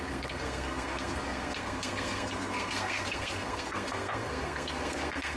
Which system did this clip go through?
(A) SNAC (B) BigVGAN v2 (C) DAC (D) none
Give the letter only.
A